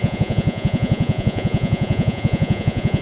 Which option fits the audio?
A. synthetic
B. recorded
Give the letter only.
A